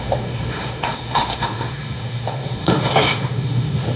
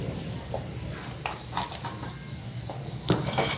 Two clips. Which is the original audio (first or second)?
second